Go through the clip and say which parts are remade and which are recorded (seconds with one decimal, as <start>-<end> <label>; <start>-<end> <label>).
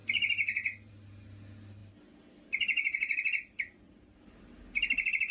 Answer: 0.0-5.3 recorded